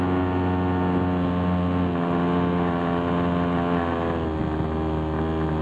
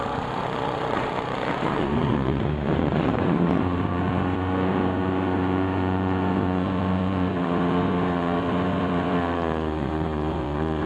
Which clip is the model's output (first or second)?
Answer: second